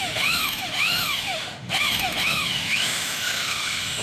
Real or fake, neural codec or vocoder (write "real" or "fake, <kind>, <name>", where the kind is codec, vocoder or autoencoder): fake, autoencoder, DAC-VAE